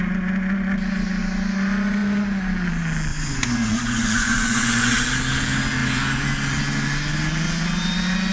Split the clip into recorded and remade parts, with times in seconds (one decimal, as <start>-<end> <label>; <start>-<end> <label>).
0.0-3.1 recorded; 3.1-4.9 remade; 4.9-8.3 recorded